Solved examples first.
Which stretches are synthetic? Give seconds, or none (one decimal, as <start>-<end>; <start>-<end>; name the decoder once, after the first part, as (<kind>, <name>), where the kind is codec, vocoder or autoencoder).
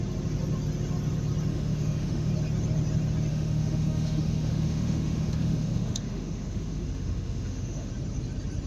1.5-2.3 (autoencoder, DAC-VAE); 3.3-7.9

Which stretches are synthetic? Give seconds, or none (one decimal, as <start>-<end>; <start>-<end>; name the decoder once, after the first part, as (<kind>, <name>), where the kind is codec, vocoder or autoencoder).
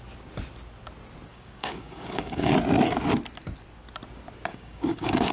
1.3-2.5 (codec, DAC); 4.5-5.3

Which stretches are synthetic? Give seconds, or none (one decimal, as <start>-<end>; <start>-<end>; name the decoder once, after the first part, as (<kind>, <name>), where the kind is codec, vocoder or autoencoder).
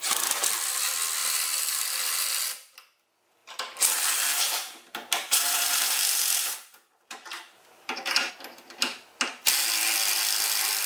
3.4-8.3 (vocoder, BigVGAN v2)